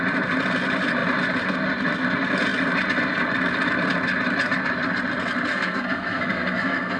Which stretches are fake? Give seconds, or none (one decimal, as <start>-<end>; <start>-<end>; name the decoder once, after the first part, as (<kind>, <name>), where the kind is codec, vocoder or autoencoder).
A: 5.5-7.0 (codec, SNAC)